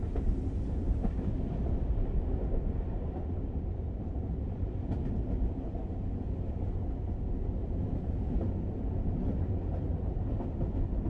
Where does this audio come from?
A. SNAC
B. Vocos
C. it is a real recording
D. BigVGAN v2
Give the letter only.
C